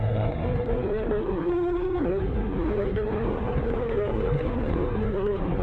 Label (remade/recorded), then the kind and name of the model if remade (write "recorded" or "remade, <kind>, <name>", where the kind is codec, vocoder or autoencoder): remade, codec, SNAC